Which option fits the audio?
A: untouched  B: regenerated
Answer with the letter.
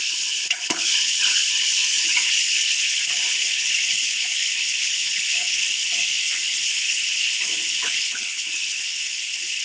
B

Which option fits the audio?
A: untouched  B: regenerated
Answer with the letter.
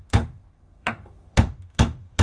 B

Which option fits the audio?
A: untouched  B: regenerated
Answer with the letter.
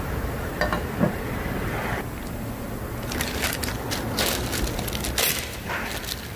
A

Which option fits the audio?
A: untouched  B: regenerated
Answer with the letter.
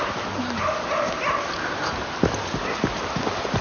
A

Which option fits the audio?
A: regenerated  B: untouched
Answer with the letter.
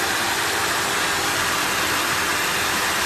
B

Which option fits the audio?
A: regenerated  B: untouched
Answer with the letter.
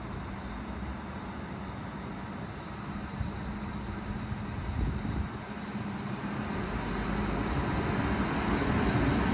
B